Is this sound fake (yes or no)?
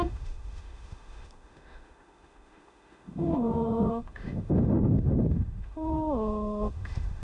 yes